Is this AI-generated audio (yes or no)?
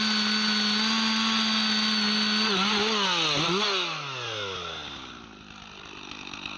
no